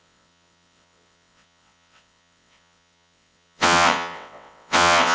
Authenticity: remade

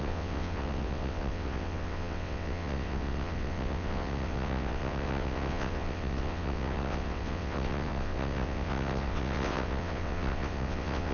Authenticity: remade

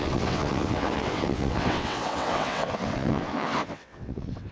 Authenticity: remade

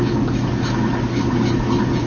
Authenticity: recorded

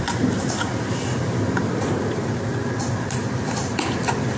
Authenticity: recorded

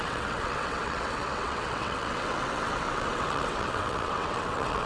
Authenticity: remade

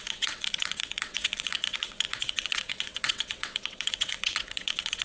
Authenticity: remade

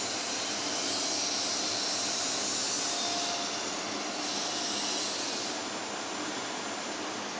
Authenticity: recorded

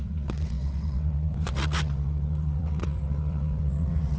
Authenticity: remade